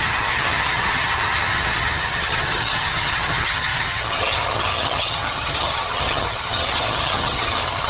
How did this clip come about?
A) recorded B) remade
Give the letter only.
B